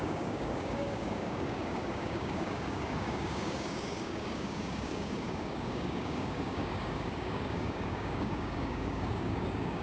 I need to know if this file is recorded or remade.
remade